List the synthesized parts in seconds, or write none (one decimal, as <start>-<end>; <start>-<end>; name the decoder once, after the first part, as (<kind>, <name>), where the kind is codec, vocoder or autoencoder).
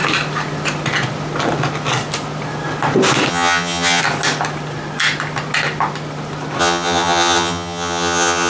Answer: 3.3-4.0 (vocoder, HiFi-GAN); 6.6-8.5